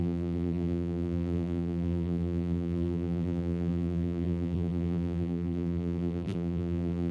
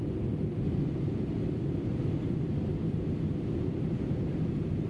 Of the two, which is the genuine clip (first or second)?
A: second